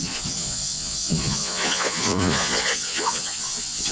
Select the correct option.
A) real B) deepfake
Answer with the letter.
B